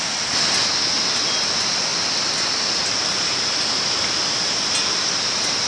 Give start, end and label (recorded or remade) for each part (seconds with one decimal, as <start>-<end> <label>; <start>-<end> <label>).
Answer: 0.0-5.7 recorded